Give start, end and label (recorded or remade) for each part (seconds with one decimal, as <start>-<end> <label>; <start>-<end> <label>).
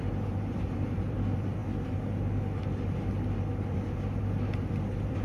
0.0-1.6 remade; 1.6-4.7 recorded; 4.7-5.2 remade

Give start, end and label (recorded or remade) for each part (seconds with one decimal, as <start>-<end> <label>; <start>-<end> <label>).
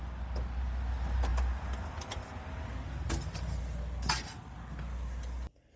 0.0-5.8 recorded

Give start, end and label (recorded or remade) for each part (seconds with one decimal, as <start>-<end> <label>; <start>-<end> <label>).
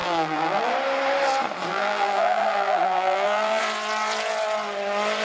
0.0-0.7 remade; 0.7-1.7 recorded; 1.7-3.6 remade; 3.6-5.2 recorded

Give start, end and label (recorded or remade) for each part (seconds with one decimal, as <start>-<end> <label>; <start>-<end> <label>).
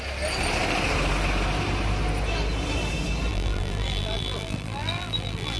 0.0-3.3 recorded; 3.3-5.6 remade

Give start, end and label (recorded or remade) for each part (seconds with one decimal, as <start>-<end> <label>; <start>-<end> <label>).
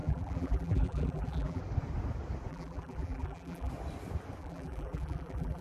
0.0-1.6 remade; 1.6-2.5 recorded; 2.5-3.7 remade; 3.7-4.4 recorded; 4.4-5.6 remade